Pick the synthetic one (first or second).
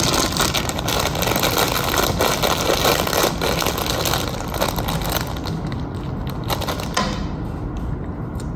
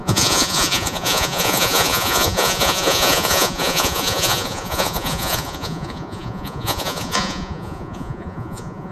second